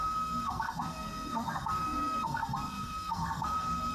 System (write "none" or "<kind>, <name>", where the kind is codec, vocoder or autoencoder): codec, SNAC